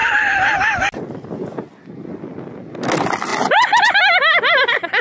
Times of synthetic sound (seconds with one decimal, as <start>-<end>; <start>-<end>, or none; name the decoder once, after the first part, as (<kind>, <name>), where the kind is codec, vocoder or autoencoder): 3.3-4.0 (vocoder, BigVGAN v2)